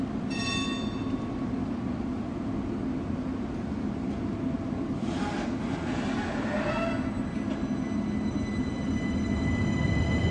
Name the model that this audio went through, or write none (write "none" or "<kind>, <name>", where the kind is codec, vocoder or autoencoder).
none